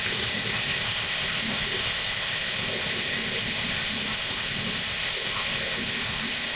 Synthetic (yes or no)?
yes